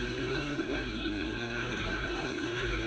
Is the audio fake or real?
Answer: fake